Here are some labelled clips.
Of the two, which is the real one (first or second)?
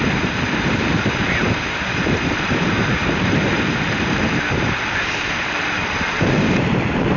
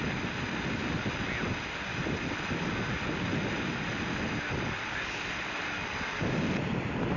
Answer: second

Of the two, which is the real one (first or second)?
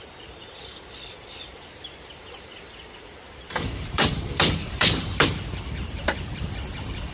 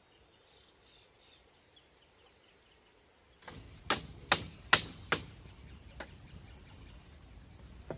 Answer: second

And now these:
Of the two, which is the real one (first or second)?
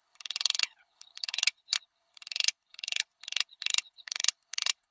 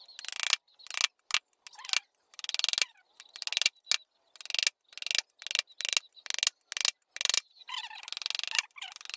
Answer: second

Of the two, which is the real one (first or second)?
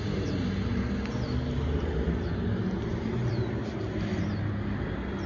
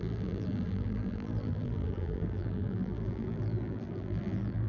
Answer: first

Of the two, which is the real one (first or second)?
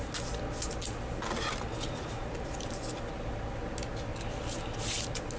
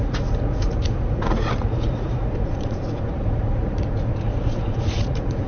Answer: first